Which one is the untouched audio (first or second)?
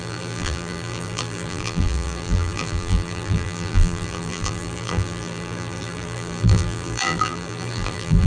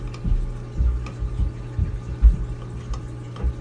second